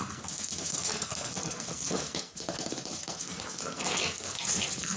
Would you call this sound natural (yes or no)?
no